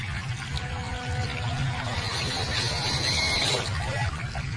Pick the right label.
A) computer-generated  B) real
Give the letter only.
B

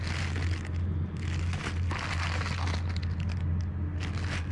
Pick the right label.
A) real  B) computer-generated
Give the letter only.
A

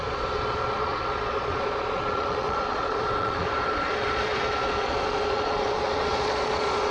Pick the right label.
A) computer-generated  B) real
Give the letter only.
A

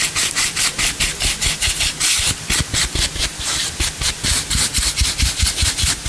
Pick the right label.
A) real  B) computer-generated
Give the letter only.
A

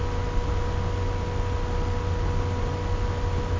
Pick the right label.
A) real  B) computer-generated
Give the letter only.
A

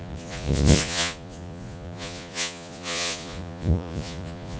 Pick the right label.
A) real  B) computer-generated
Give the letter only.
B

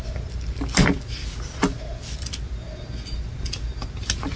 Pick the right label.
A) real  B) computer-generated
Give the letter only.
A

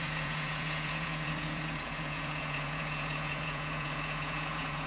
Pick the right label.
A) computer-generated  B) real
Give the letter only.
A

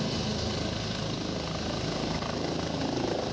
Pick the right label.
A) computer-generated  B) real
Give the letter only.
B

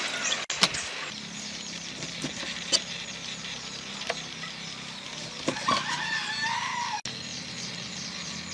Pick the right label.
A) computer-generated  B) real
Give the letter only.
B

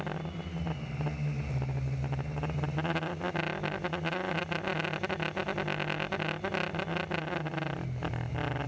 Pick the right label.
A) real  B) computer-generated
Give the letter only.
A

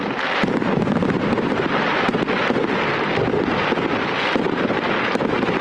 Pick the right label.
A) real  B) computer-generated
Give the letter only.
A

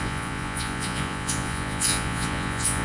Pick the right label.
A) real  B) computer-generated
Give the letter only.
B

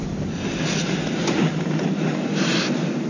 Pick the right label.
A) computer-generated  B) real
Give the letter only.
B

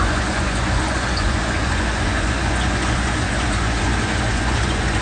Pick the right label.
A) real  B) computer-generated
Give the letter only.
B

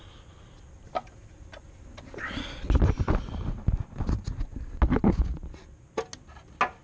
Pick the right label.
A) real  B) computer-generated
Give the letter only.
A